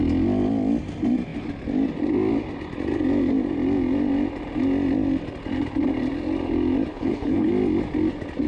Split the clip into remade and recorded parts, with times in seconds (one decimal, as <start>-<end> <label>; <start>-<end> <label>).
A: 0.0-6.9 recorded; 6.9-7.5 remade; 7.5-8.5 recorded

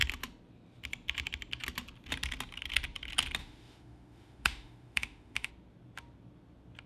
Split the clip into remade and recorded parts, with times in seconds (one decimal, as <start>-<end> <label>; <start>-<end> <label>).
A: 0.0-3.4 recorded; 3.4-5.5 remade; 5.5-6.9 recorded

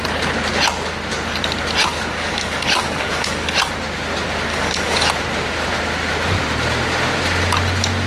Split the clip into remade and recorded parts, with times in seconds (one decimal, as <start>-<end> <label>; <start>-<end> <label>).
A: 0.0-1.8 recorded; 1.8-3.7 remade; 3.7-4.5 recorded; 4.5-5.1 remade; 5.1-8.1 recorded

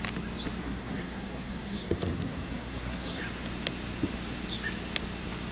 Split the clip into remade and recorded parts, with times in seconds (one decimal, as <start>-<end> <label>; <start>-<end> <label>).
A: 0.0-0.6 recorded; 0.6-3.2 remade; 3.2-5.5 recorded

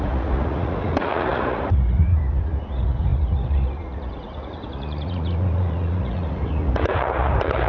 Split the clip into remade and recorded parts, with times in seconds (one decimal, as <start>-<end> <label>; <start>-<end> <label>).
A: 0.0-7.7 remade

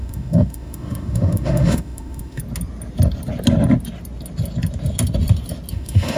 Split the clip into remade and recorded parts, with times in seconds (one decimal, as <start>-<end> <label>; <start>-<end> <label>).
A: 0.0-2.4 remade; 2.4-5.7 recorded; 5.7-6.2 remade

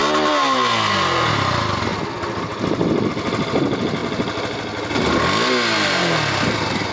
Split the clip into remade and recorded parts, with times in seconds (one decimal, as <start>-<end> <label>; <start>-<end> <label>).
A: 0.0-6.9 recorded

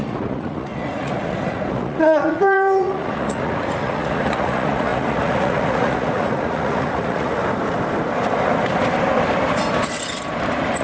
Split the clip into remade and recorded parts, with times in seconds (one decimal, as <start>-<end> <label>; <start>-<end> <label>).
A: 0.0-7.4 remade; 7.4-10.8 recorded